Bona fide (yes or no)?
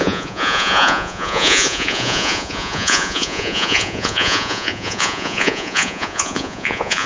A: no